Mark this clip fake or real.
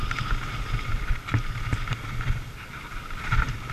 real